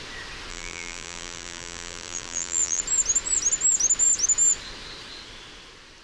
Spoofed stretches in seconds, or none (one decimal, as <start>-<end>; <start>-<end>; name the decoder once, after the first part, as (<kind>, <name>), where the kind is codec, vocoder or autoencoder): 0.5-2.8 (vocoder, BigVGAN v2)